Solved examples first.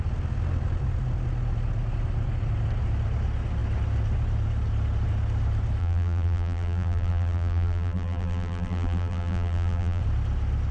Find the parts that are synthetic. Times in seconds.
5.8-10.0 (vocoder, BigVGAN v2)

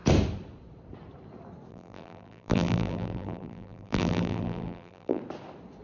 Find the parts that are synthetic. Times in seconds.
1.7-5.2 (vocoder, BigVGAN v2)

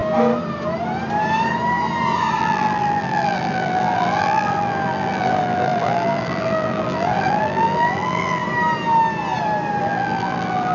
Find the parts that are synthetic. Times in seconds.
2.4-8.4 (vocoder, BigVGAN v2); 9.8-10.7

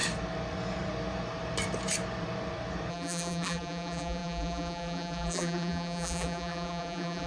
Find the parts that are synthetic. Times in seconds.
2.9-7.3 (vocoder, BigVGAN v2)